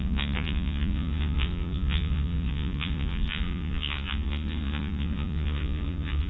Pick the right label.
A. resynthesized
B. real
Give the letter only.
A